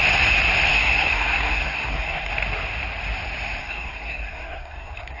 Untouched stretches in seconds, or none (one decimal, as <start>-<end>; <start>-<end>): 0.0-0.7; 2.3-3.6